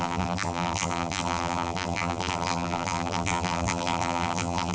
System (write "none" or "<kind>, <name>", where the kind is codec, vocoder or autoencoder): vocoder, BigVGAN v2